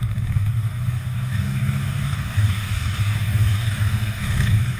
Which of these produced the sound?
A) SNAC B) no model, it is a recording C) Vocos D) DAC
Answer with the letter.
D